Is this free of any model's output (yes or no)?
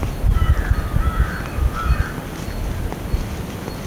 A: yes